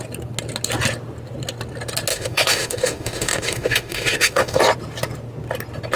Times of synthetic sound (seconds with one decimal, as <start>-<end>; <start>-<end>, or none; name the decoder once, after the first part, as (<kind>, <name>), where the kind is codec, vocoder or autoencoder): 2.1-4.6 (autoencoder, DAC-VAE)